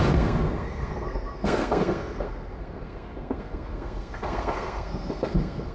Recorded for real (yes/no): no